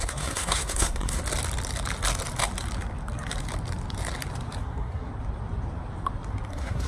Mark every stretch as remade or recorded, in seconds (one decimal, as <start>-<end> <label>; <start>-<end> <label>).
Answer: 0.0-1.2 remade; 1.2-4.6 recorded; 4.6-5.1 remade; 5.1-6.5 recorded; 6.5-6.9 remade